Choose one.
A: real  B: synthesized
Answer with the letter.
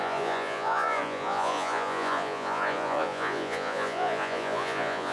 B